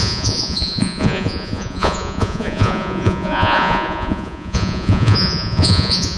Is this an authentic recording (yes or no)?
no